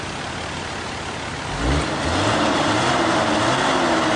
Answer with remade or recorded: recorded